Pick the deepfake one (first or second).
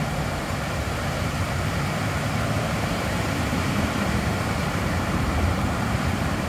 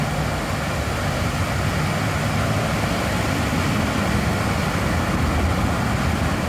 first